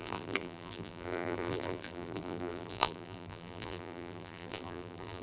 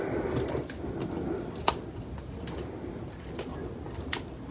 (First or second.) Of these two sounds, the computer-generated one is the first